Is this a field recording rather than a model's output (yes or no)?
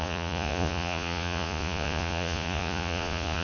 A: no